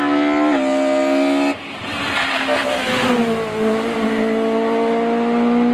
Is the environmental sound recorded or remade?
recorded